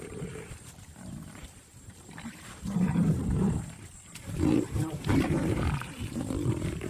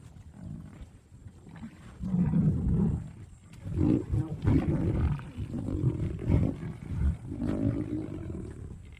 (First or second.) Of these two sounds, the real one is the second